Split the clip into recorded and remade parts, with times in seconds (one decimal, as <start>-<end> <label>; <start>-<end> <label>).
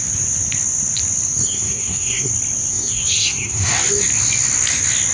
0.0-1.4 recorded; 1.4-2.3 remade; 2.3-2.7 recorded; 2.7-3.7 remade; 3.7-5.1 recorded